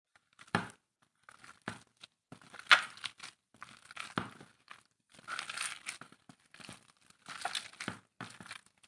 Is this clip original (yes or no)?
yes